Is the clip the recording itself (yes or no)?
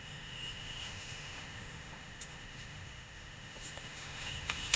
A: no